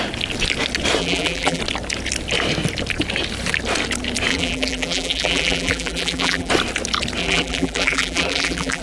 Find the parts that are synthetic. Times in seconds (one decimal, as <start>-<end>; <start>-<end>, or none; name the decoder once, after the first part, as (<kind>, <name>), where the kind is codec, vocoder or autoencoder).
1.0-1.6 (vocoder, BigVGAN v2); 4.3-6.5; 7.2-8.8